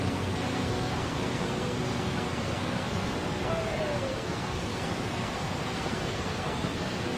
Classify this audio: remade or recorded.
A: remade